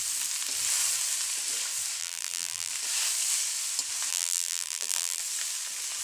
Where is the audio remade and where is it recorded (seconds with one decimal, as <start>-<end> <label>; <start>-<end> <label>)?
0.0-2.0 recorded; 2.0-2.7 remade; 2.7-4.1 recorded; 4.1-5.2 remade; 5.2-6.0 recorded

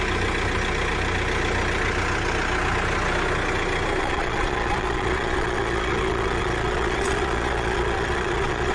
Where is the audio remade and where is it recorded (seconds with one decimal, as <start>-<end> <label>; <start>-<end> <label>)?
0.0-4.0 recorded; 4.0-8.7 remade

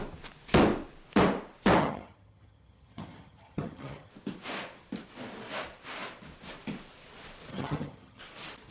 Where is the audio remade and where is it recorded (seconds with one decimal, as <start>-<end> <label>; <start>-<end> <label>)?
0.0-1.8 recorded; 1.8-4.1 remade; 4.1-7.5 recorded; 7.5-8.2 remade; 8.2-8.7 recorded

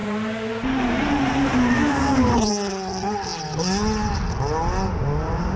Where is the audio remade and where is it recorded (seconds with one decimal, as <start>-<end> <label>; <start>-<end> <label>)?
0.0-2.5 remade; 2.5-5.6 recorded

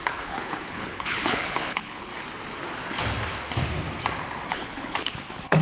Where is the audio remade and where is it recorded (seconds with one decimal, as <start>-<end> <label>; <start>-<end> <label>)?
0.0-2.1 remade; 2.1-4.5 recorded; 4.5-5.6 remade

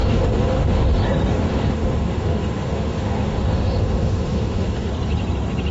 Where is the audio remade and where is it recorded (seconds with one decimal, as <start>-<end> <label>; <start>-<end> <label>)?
0.0-1.0 remade; 1.0-1.5 recorded; 1.5-4.9 remade; 4.9-5.7 recorded